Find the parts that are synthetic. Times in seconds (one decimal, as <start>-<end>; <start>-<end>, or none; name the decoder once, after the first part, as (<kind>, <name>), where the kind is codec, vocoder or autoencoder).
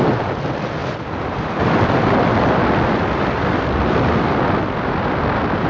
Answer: 0.8-4.2 (vocoder, BigVGAN v2)